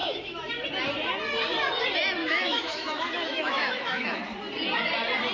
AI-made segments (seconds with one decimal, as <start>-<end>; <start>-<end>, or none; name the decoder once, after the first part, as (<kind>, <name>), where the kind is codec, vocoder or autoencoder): 0.0-0.5 (autoencoder, DAC-VAE); 2.2-4.2